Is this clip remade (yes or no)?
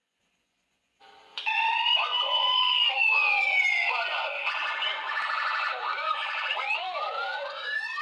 yes